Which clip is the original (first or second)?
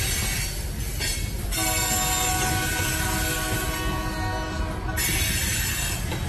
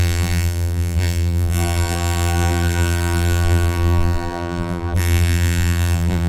first